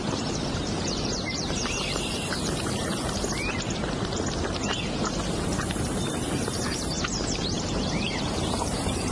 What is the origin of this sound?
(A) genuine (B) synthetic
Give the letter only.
B